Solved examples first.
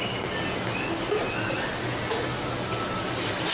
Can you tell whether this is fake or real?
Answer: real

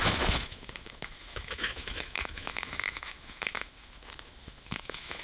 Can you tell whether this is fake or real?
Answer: fake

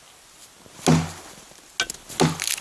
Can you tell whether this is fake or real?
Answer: real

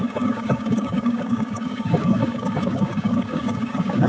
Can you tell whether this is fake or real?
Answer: fake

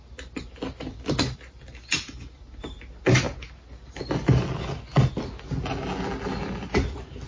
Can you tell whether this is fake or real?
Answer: real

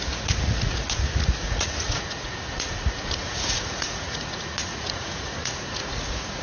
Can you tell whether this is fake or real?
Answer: fake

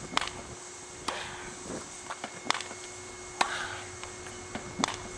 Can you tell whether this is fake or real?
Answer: real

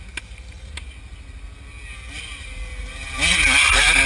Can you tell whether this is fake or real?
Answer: real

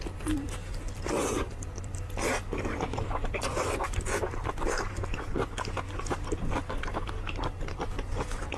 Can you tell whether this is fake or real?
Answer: fake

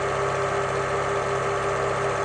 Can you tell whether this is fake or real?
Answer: real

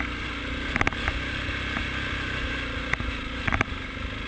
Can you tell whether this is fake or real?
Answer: real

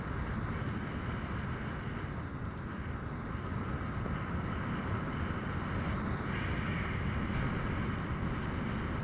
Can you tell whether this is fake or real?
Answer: real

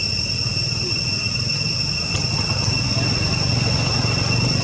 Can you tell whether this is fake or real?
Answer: real